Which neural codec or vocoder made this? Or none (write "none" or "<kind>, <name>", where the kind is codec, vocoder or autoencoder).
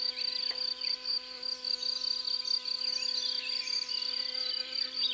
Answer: none